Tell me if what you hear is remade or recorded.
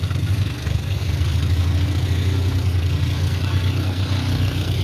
remade